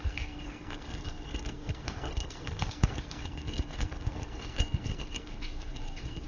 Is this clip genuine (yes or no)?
no